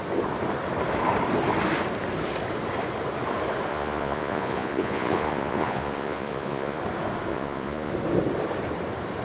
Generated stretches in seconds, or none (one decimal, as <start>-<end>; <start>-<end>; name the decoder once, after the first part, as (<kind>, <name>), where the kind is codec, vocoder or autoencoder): 3.7-6.8 (vocoder, Vocos); 7.3-7.9